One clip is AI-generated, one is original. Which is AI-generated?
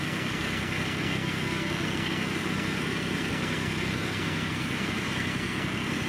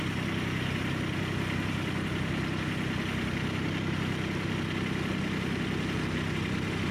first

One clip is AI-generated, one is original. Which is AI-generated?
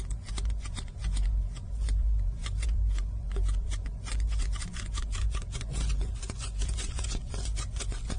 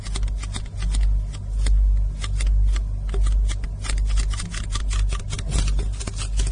first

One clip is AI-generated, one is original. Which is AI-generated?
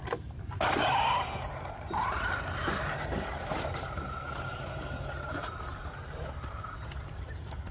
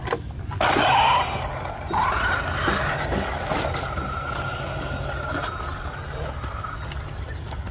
first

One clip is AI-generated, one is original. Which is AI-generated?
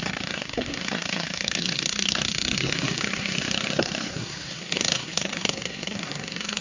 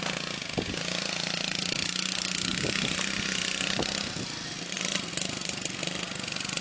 first